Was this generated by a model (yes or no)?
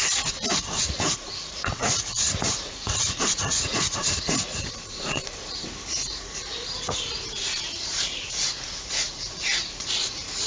yes